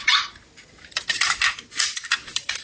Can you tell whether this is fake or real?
fake